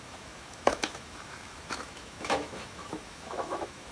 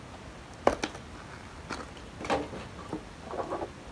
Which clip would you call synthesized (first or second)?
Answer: first